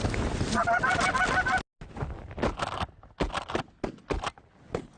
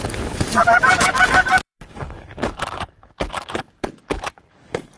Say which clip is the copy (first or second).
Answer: second